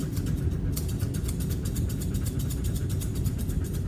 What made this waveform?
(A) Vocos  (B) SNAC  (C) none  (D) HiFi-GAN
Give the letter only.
C